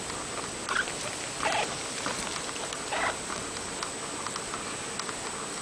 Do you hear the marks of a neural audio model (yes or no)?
no